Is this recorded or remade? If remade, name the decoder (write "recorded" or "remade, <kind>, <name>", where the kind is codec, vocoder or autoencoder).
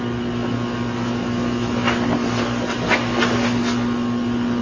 recorded